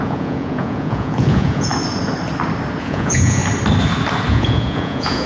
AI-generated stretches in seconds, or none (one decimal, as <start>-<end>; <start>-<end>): 0.0-1.7; 2.8-3.4; 4.3-5.3